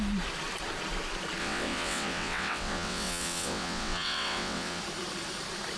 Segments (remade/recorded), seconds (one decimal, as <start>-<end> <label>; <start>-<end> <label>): 0.0-1.4 recorded; 1.4-4.8 remade; 4.8-5.8 recorded